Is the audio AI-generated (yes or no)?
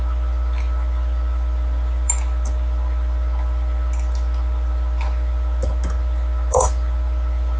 no